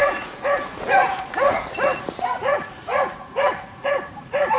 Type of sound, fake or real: fake